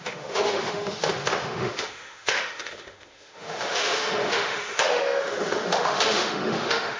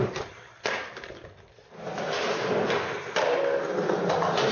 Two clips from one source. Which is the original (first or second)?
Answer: second